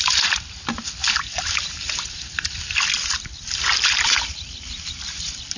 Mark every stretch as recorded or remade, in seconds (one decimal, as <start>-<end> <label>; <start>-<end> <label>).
0.0-5.6 recorded